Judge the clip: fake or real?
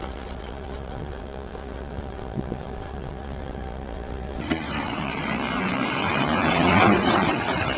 fake